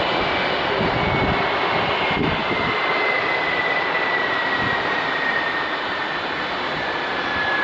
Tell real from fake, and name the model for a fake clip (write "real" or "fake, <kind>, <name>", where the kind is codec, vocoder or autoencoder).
real